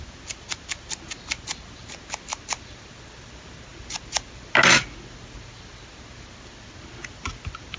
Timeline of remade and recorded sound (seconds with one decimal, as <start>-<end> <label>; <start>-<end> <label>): 0.0-7.8 recorded

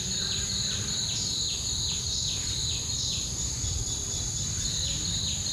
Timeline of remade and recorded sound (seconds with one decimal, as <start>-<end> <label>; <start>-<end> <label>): 0.0-2.6 recorded; 2.6-3.6 remade; 3.6-5.5 recorded

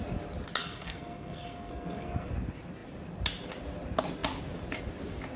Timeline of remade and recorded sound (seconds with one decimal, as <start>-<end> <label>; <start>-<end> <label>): 0.0-0.6 recorded; 0.6-2.3 remade; 2.3-5.4 recorded

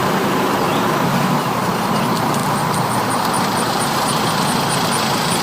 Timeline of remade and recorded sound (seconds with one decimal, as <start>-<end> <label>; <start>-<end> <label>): 0.0-2.4 recorded; 2.4-4.3 remade; 4.3-5.4 recorded